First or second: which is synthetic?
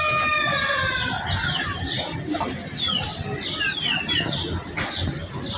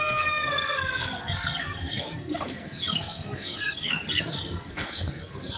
second